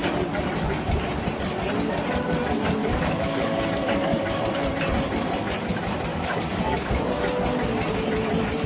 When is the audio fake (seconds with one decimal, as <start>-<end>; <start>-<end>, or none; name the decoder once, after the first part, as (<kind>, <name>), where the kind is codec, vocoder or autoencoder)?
2.8-4.4 (codec, DAC); 6.1-7.2